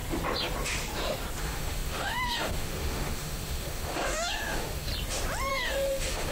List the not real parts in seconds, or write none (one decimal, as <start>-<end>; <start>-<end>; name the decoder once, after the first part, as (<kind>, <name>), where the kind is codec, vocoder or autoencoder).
1.4-4.9 (autoencoder, DAC-VAE); 5.5-6.3